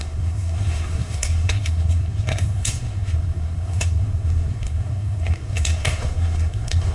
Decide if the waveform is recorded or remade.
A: remade